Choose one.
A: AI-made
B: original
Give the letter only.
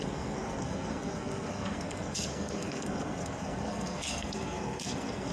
A